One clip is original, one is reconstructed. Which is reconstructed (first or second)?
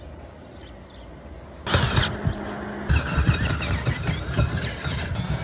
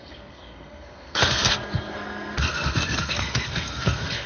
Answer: second